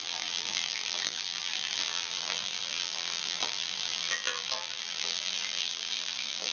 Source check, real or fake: fake